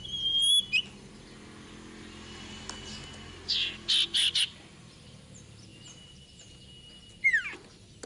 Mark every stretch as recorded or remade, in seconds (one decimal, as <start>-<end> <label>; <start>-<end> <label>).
0.0-8.1 recorded